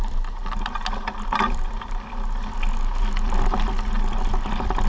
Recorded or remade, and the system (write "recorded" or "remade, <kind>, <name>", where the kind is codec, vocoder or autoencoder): recorded